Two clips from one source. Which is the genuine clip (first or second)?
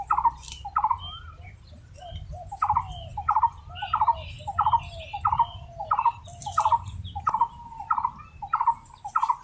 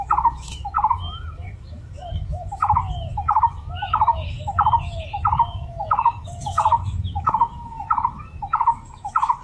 first